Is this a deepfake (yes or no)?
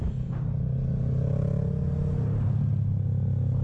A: no